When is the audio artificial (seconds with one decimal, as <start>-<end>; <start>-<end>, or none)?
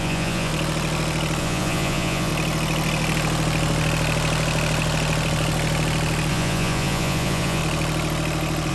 0.0-0.5; 1.4-2.3; 6.3-7.6